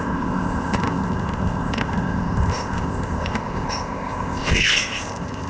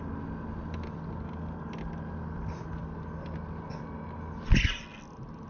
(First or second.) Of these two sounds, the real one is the second